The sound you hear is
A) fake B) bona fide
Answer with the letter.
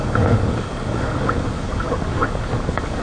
A